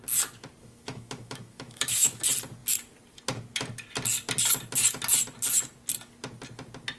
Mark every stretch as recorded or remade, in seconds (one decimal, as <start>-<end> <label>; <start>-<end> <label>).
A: 0.0-0.6 recorded; 0.6-2.2 remade; 2.2-7.0 recorded